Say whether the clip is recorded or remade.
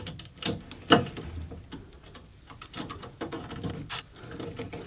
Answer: recorded